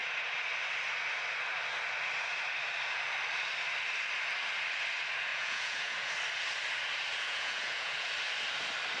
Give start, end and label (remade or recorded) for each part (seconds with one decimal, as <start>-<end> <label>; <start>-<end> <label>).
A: 0.0-5.3 recorded; 5.3-6.1 remade; 6.1-7.1 recorded; 7.1-8.1 remade; 8.1-9.0 recorded